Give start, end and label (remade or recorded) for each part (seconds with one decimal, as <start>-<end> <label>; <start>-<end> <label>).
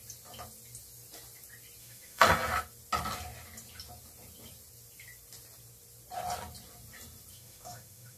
0.0-1.8 recorded; 1.8-2.3 remade; 2.3-7.3 recorded; 7.3-8.2 remade